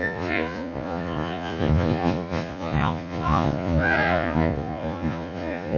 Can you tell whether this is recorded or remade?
remade